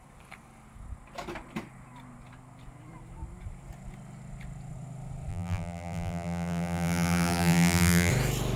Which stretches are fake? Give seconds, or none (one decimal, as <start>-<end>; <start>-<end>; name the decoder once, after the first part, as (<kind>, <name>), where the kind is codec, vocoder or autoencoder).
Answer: 5.3-8.1 (vocoder, BigVGAN v2)